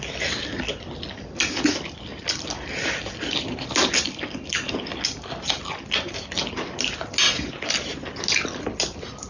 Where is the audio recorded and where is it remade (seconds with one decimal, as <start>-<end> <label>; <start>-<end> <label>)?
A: 0.0-9.3 recorded